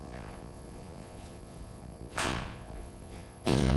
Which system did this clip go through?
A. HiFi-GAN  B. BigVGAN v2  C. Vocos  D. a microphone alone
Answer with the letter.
C